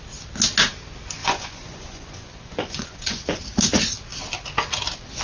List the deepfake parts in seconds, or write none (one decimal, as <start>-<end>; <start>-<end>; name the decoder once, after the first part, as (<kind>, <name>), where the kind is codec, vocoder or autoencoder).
1.2-3.4 (vocoder, Vocos)